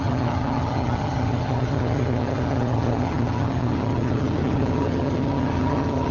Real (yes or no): no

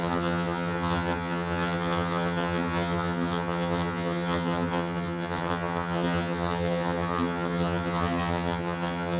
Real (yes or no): no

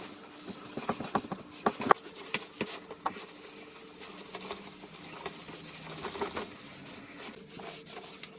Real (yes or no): yes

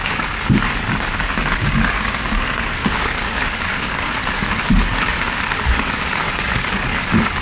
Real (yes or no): no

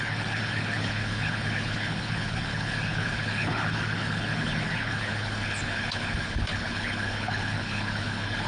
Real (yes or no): no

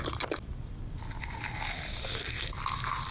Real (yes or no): yes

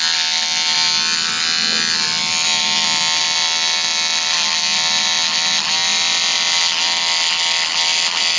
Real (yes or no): yes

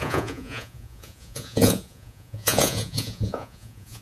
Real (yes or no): no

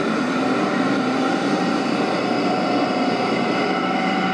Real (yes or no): no